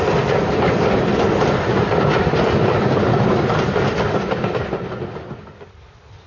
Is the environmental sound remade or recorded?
recorded